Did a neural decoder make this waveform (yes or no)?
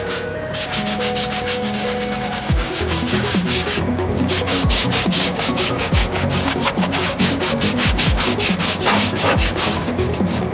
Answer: yes